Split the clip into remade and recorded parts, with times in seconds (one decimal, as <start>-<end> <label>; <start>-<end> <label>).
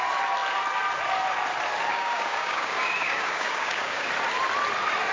0.0-1.9 recorded; 1.9-4.1 remade; 4.1-5.1 recorded